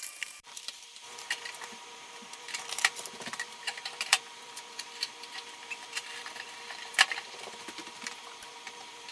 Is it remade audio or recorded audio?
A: remade